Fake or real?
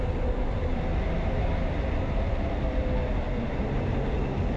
real